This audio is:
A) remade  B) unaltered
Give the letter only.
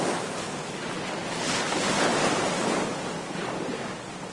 B